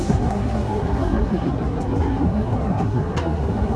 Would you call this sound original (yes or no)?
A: no